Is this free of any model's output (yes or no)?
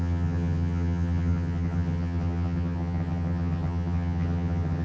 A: no